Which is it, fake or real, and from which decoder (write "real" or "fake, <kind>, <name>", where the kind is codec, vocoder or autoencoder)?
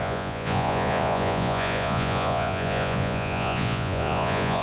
fake, vocoder, Vocos